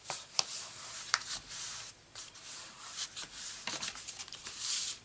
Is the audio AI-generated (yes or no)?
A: yes